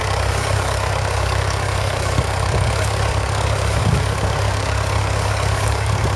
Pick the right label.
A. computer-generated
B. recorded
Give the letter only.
A